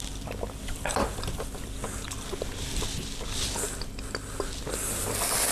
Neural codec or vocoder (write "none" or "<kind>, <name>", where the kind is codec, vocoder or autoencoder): none